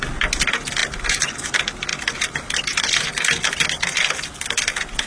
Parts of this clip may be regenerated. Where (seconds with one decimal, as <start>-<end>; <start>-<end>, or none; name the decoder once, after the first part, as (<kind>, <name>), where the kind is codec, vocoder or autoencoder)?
none

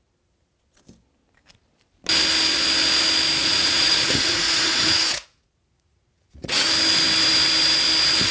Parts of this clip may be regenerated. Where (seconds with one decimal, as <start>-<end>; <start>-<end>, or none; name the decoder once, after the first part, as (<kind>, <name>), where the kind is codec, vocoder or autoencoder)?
3.4-6.7 (vocoder, Vocos)

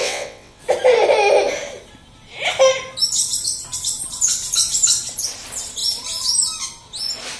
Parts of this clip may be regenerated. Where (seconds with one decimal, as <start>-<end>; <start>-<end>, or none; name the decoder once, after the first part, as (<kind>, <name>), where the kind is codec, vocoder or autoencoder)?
0.0-0.6 (vocoder, WaveNeXt)

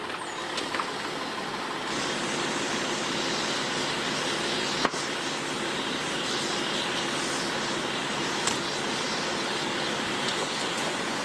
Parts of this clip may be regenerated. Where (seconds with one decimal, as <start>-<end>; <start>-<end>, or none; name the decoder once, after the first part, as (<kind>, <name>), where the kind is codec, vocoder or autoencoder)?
10.2-11.2 (vocoder, Vocos)

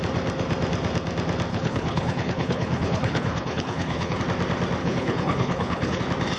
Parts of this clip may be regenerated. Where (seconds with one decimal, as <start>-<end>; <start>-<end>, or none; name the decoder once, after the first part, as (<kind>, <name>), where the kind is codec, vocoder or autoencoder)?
1.5-4.2 (codec, HILCodec); 4.8-6.0